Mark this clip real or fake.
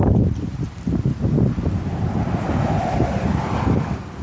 real